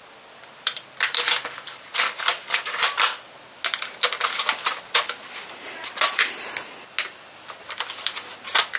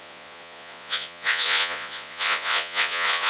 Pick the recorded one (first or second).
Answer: first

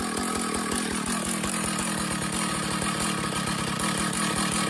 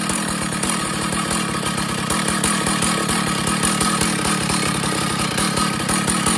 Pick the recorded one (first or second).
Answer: first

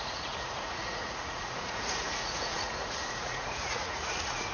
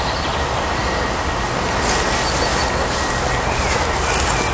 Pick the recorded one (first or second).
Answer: second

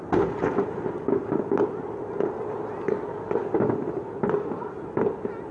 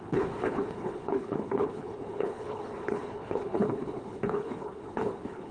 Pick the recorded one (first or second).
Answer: first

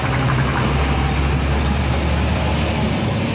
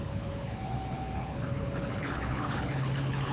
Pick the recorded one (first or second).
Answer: first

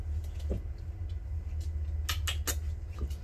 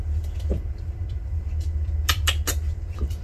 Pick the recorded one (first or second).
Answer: first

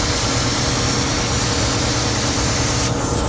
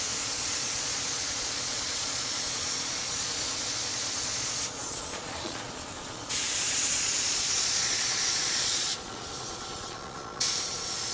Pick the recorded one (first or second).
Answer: first